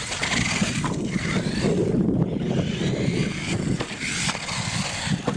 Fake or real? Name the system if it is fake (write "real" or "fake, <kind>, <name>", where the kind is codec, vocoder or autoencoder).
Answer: real